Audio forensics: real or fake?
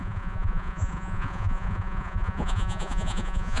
fake